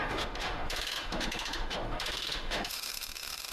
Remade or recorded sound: remade